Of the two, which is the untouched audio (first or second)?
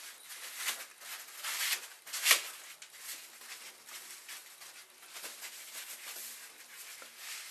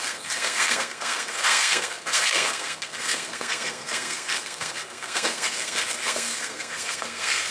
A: first